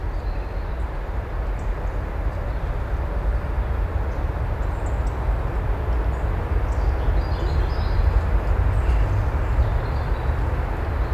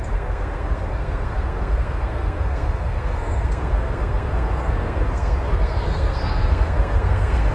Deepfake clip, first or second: second